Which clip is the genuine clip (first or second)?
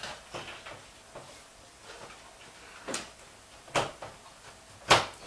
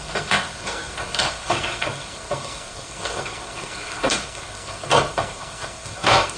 first